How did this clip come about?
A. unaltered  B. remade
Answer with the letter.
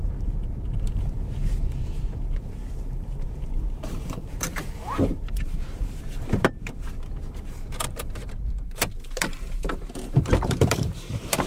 B